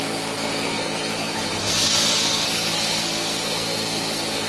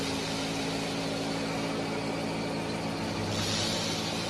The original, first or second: second